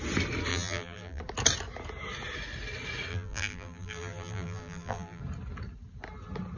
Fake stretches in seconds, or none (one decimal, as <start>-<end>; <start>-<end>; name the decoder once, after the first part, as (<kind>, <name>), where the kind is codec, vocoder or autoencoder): 0.5-1.2 (vocoder, BigVGAN v2); 3.1-5.2